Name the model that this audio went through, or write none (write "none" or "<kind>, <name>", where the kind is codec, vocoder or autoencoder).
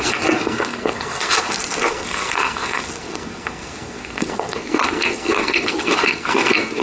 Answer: codec, SNAC